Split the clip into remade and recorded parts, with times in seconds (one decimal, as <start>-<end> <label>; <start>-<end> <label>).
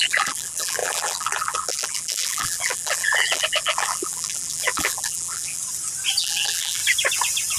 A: 0.0-5.6 remade; 5.6-6.2 recorded; 6.2-6.8 remade; 6.8-7.6 recorded